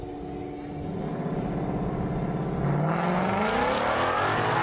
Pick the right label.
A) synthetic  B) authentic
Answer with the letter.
B